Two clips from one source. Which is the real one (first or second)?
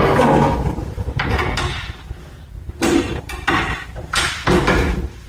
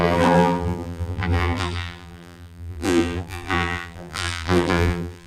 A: first